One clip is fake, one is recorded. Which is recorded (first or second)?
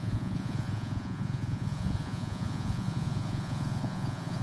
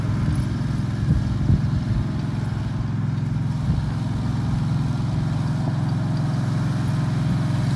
second